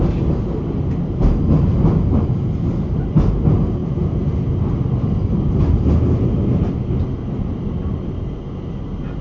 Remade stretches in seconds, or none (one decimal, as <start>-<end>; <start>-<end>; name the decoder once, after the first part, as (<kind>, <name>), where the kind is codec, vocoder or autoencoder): none